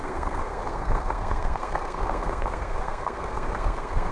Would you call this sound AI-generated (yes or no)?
yes